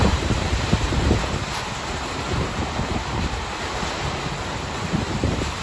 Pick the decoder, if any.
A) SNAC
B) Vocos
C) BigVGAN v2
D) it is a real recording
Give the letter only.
C